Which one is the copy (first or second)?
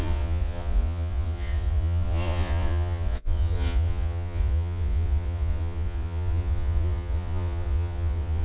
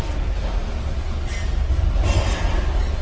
first